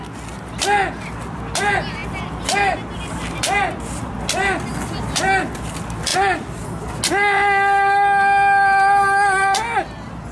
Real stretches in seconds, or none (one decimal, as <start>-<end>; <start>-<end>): 0.0-10.3